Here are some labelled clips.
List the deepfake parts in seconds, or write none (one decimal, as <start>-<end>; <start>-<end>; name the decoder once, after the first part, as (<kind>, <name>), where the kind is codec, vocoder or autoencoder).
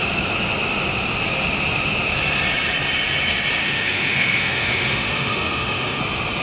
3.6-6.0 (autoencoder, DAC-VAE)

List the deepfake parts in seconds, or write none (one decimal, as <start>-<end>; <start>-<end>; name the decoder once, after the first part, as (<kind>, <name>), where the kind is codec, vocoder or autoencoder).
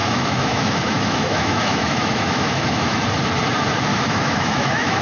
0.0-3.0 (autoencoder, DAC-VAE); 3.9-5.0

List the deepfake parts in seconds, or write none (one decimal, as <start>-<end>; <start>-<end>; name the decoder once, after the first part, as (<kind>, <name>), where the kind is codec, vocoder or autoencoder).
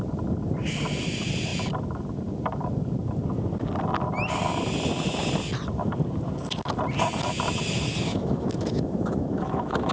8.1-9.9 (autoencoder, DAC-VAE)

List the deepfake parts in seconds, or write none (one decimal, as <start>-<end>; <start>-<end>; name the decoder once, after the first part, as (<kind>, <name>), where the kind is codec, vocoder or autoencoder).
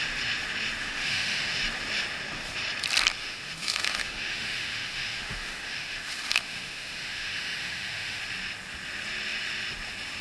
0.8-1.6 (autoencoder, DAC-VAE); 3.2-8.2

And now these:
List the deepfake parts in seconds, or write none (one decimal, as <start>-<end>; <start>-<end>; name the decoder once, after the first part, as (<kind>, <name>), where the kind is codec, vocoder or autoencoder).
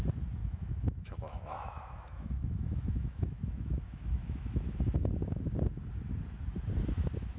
0.4-4.8 (autoencoder, DAC-VAE)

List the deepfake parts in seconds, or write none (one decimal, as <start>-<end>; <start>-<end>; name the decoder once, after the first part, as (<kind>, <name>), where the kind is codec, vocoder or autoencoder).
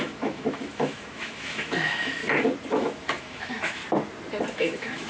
0.0-2.2 (autoencoder, DAC-VAE); 2.7-3.8; 4.5-5.1